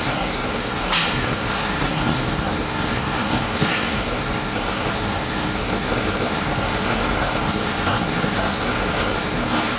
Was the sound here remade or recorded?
remade